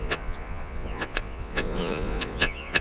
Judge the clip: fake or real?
fake